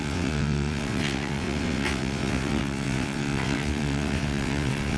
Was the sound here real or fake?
fake